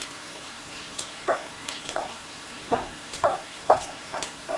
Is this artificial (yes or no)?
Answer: yes